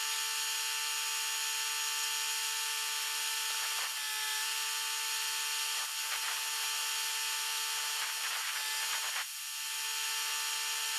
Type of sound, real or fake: real